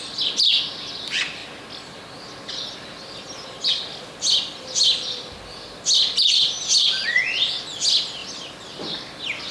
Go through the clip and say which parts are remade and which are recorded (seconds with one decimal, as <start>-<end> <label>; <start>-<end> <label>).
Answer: 0.0-9.5 recorded